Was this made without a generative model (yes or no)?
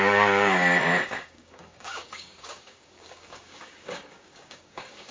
no